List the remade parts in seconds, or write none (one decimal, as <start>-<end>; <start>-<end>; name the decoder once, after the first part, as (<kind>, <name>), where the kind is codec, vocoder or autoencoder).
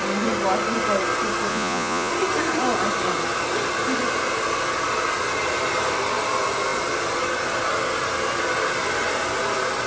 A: 1.5-2.1 (vocoder, Vocos)